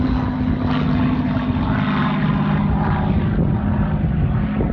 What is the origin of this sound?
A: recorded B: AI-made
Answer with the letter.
A